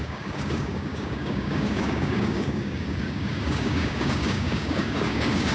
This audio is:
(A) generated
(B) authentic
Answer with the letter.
A